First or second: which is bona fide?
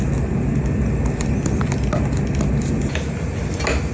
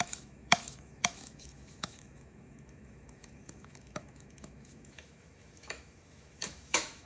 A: first